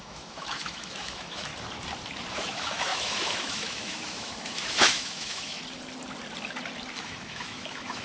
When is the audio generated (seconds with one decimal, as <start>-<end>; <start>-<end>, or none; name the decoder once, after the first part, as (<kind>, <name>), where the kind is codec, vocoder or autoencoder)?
0.0-1.5 (autoencoder, DAC-VAE); 2.3-5.6; 7.0-8.0